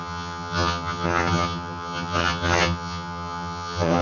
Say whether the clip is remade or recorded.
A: remade